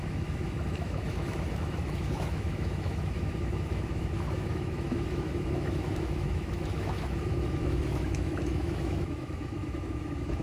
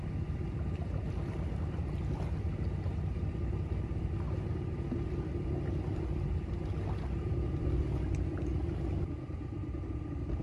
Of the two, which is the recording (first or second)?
second